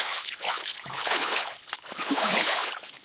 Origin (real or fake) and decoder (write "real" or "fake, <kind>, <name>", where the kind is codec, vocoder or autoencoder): fake, codec, HILCodec